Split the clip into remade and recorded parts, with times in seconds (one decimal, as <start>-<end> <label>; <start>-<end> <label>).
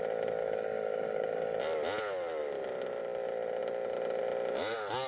0.0-0.4 recorded; 0.4-1.6 remade; 1.6-5.1 recorded